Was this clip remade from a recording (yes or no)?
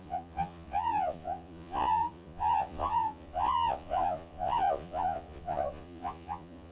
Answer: yes